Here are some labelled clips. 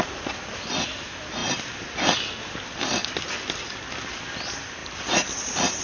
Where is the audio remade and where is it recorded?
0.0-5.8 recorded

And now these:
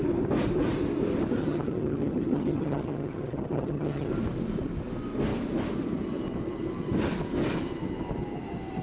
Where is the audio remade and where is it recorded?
0.0-1.4 recorded; 1.4-4.1 remade; 4.1-8.8 recorded

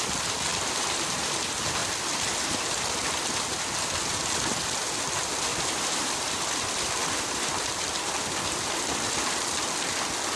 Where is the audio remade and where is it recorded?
0.0-5.5 recorded; 5.5-9.1 remade; 9.1-10.4 recorded

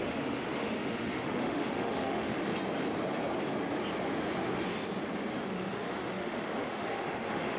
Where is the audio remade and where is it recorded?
0.0-2.5 remade; 2.5-5.3 recorded; 5.3-7.6 remade

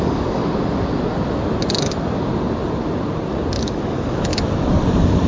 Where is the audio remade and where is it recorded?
0.0-0.4 remade; 0.4-3.6 recorded; 3.6-4.3 remade; 4.3-5.3 recorded

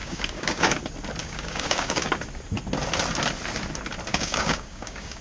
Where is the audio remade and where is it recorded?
0.0-0.7 remade; 0.7-1.2 recorded; 1.2-2.1 remade; 2.1-4.1 recorded; 4.1-5.2 remade

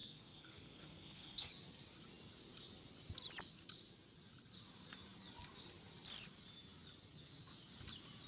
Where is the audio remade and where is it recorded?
0.0-1.5 remade; 1.5-8.3 recorded